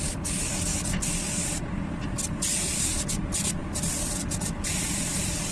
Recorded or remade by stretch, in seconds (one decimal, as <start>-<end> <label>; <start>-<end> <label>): 0.0-0.7 recorded; 0.7-2.8 remade; 2.8-3.6 recorded; 3.6-4.8 remade; 4.8-5.5 recorded

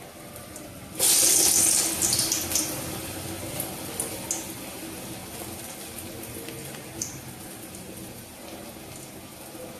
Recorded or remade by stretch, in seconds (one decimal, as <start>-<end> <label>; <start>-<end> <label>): 0.0-9.8 recorded